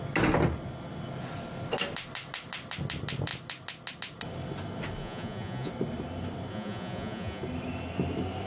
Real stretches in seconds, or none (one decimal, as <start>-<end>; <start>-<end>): 0.0-5.0; 5.7-6.5; 7.4-8.5